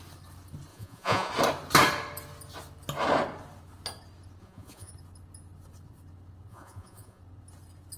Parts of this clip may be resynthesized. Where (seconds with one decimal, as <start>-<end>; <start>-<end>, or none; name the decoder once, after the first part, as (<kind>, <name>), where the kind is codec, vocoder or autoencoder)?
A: 0.7-1.3 (vocoder, Vocos); 4.4-4.9; 6.5-7.2